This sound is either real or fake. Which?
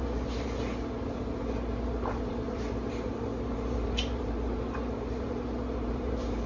fake